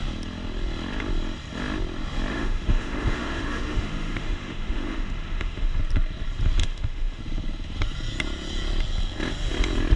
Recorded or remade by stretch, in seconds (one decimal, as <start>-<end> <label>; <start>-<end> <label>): 0.0-2.3 recorded; 2.3-5.8 remade; 5.8-6.6 recorded; 6.6-7.2 remade; 7.2-10.0 recorded